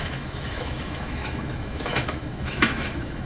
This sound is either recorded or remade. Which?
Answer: remade